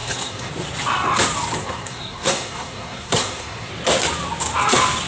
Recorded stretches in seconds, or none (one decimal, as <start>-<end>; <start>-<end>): 0.5-1.6; 3.7-5.1